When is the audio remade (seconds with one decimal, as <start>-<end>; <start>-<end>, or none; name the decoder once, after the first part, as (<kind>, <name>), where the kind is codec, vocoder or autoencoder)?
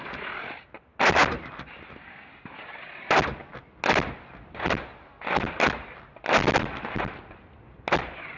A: none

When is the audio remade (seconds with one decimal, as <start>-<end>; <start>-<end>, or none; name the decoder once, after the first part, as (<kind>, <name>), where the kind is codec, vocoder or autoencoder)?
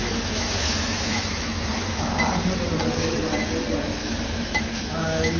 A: 0.0-2.2 (autoencoder, DAC-VAE); 4.0-5.4